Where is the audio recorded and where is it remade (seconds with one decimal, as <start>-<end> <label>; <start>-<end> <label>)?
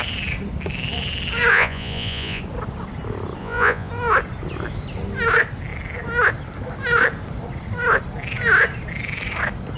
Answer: 0.0-1.5 recorded; 1.5-2.4 remade; 2.4-3.4 recorded; 3.4-3.9 remade; 3.9-9.8 recorded